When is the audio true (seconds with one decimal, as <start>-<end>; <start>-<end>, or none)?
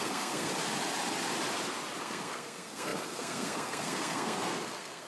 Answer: 0.5-2.0